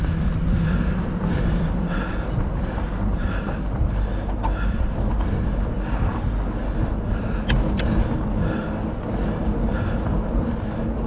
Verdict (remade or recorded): recorded